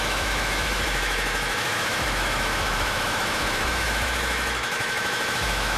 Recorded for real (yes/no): no